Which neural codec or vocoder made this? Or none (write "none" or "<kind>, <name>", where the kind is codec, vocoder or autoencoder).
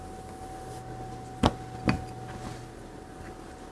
none